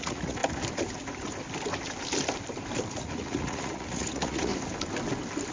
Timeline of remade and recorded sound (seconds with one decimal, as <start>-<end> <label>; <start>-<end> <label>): 0.0-0.4 remade; 0.4-2.9 recorded; 2.9-4.5 remade; 4.5-5.5 recorded